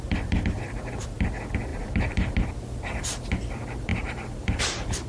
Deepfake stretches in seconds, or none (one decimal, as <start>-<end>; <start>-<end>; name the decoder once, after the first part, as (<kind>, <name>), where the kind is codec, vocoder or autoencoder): 1.7-2.5 (vocoder, BigVGAN v2); 3.9-5.1